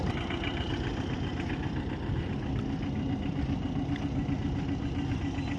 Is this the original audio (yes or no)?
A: yes